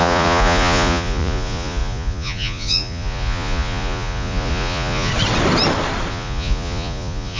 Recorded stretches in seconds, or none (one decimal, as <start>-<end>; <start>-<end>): 5.1-6.1